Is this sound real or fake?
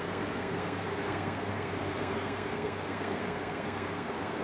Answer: fake